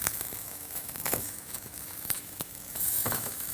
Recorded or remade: remade